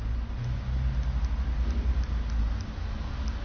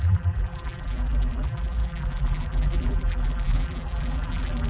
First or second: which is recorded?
first